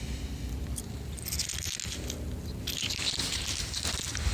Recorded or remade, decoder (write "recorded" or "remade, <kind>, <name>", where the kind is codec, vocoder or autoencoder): recorded